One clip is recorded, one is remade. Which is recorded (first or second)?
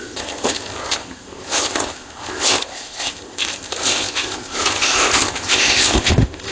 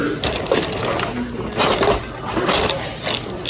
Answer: second